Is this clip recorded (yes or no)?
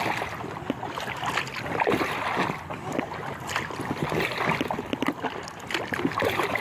yes